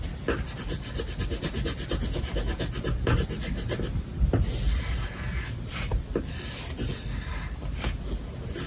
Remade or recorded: recorded